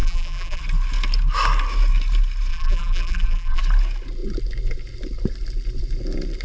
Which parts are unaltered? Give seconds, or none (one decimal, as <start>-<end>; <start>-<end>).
0.6-2.5; 3.6-6.4